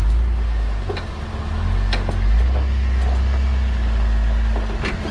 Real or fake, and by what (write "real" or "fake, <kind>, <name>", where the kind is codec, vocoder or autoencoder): real